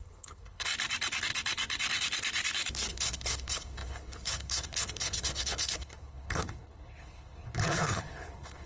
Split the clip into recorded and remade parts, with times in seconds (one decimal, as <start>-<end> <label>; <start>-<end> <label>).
0.0-0.7 remade; 0.7-2.9 recorded; 2.9-8.7 remade